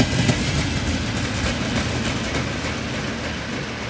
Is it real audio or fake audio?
real